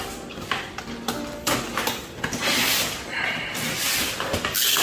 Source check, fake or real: real